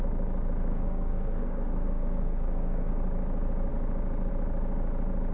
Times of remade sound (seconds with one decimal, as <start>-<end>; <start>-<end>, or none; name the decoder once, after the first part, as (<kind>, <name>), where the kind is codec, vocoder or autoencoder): 0.7-2.9 (codec, SNAC)